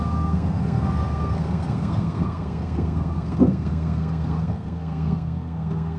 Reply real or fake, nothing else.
fake